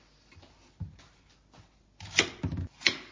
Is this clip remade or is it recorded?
remade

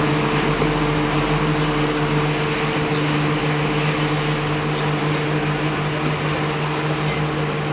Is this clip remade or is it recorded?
recorded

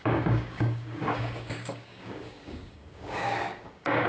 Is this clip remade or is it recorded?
remade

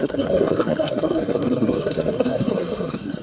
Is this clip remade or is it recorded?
remade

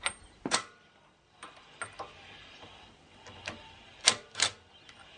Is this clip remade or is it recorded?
remade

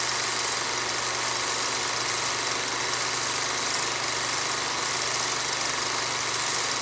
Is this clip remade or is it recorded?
recorded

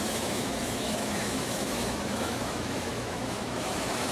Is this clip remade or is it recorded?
remade